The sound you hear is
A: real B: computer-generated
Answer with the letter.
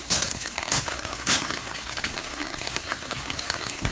B